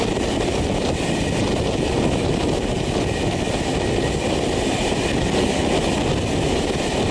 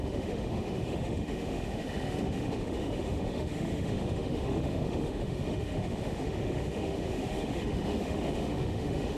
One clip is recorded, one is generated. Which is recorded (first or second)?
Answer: first